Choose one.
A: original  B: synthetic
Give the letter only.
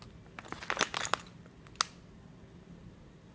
A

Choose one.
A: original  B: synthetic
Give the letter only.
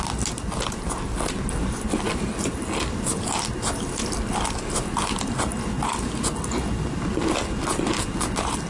A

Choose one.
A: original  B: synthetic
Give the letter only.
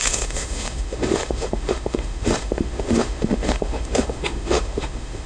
B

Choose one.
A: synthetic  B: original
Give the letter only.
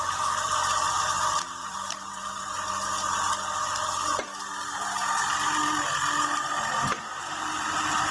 A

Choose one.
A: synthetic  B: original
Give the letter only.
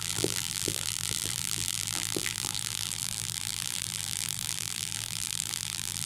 A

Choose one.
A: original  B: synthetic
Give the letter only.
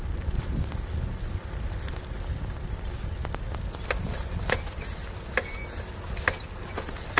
A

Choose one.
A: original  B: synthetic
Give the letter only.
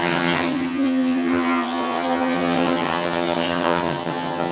B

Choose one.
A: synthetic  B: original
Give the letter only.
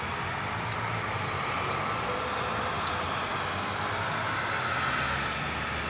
B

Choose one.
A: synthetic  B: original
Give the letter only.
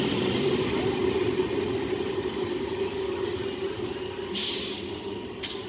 B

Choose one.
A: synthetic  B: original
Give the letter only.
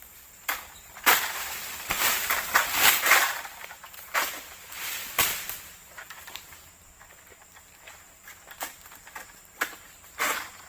A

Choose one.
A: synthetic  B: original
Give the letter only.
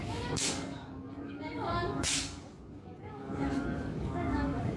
A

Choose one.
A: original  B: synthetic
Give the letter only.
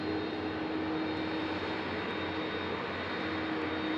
A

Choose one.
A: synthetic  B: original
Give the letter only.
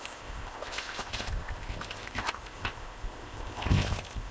A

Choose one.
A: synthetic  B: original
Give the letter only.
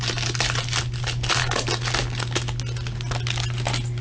B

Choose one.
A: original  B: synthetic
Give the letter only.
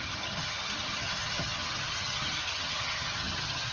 B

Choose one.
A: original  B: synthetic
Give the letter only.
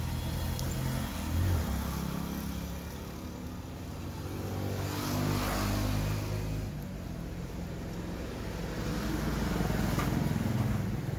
A